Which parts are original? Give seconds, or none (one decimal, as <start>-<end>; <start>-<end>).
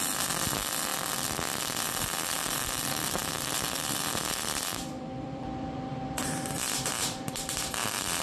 0.9-2.0